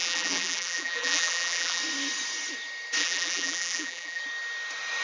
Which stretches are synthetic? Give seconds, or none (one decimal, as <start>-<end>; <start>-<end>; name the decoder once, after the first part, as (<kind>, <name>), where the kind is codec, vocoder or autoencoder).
0.0-1.8 (vocoder, BigVGAN v2); 3.0-4.2